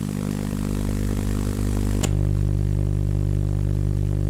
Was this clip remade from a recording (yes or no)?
yes